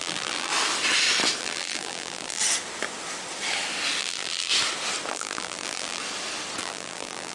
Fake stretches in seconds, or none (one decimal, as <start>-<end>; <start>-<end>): 0.0-0.5; 1.4-2.4; 4.0-4.5; 5.1-6.0; 6.6-7.3